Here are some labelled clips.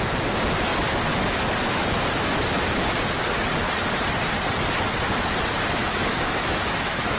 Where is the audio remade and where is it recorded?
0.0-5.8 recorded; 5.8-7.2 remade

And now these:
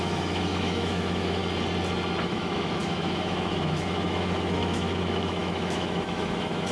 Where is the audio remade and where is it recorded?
0.0-1.4 remade; 1.4-2.2 recorded; 2.2-6.7 remade